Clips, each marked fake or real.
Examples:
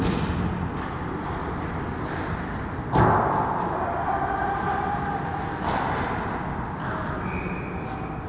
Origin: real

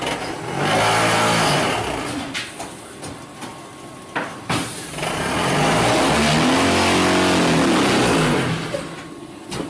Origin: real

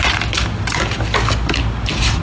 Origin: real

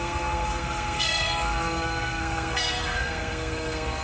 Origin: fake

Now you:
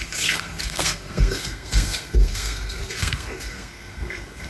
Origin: fake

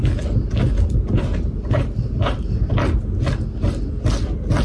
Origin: real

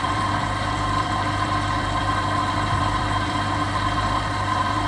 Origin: fake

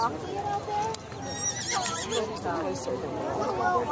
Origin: real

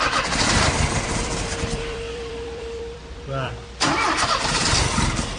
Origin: fake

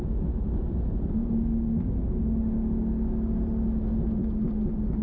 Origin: real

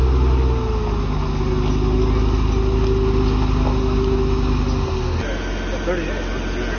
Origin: real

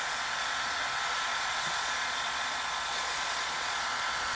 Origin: fake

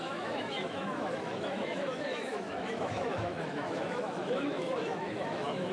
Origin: fake